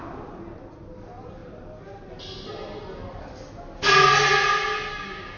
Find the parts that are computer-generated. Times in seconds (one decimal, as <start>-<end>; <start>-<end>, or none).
4.9-5.4